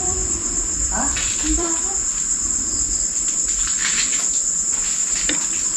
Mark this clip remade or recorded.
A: remade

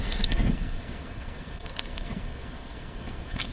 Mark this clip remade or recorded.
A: remade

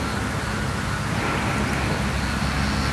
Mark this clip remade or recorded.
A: recorded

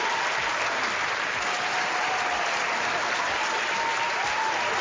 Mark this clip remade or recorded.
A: recorded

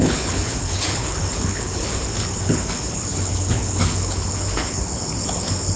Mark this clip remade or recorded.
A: remade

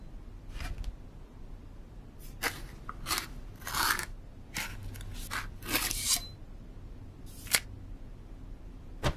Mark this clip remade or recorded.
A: recorded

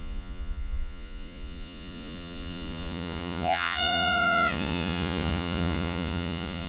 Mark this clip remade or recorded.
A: remade